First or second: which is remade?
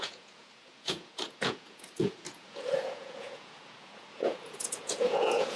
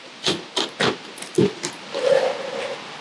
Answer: first